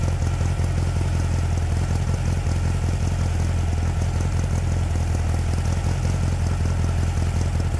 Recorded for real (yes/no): yes